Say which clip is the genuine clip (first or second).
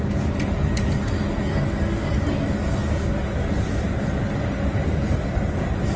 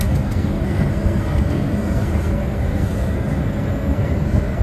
first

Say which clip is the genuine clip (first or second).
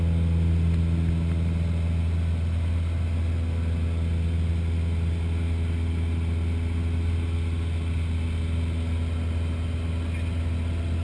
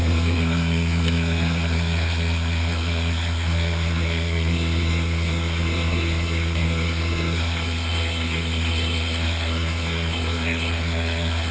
first